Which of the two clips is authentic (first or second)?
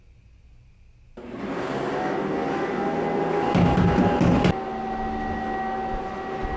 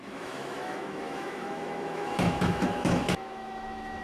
first